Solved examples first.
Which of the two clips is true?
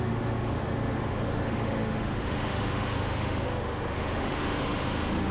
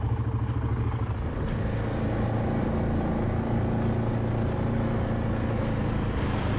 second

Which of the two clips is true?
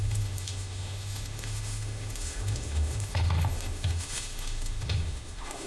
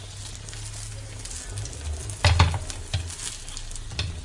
second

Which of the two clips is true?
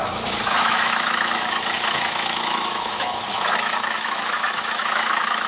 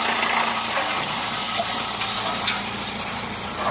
second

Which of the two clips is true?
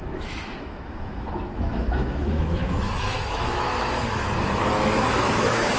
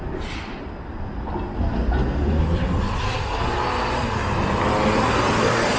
second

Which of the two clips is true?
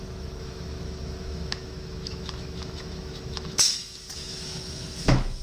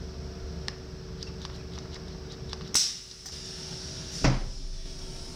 second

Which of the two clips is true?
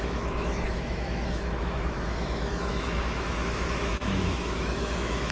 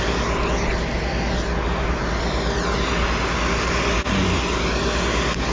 second